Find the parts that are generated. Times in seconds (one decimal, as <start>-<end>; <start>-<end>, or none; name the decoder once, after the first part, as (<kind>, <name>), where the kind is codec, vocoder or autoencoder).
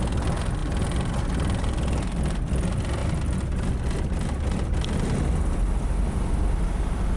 none